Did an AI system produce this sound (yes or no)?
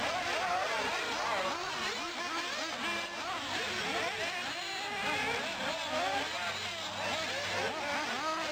no